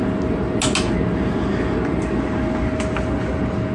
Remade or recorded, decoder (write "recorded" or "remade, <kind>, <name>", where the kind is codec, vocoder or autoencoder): recorded